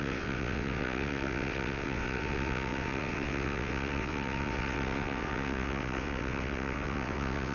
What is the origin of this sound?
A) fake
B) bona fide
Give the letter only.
A